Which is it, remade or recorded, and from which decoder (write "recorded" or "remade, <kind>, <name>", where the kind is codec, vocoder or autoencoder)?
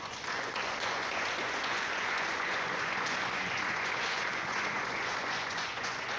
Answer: remade, vocoder, Vocos